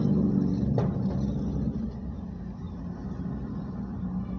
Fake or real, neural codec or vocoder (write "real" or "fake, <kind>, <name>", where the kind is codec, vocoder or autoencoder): real